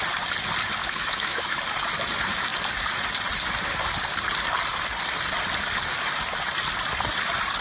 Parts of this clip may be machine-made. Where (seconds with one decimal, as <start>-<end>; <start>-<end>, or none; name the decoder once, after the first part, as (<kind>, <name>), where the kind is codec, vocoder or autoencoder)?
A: 0.8-1.6 (autoencoder, DAC-VAE)